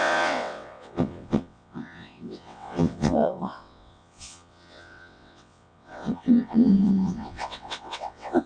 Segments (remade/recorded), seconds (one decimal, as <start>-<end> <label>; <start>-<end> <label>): 0.0-8.5 remade

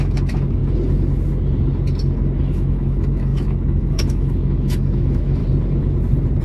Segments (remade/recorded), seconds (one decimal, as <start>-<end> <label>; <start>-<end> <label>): 0.0-0.6 remade; 0.6-2.4 recorded; 2.4-5.4 remade; 5.4-6.4 recorded

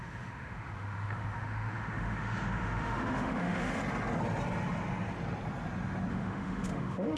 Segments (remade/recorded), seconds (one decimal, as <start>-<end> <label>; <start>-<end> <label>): 0.0-3.8 remade; 3.8-6.1 recorded; 6.1-7.2 remade

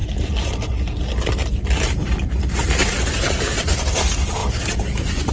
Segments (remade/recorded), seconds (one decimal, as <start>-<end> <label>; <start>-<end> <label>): 0.0-3.2 recorded; 3.2-4.4 remade; 4.4-5.3 recorded

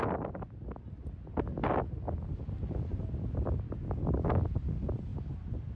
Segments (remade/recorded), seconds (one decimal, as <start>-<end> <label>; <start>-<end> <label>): 0.0-5.8 recorded

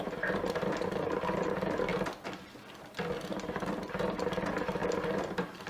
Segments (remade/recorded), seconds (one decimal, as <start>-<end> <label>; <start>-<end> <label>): 0.0-5.7 recorded